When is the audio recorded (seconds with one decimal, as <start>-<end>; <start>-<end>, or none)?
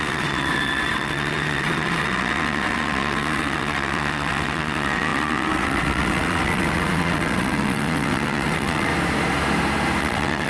8.9-10.0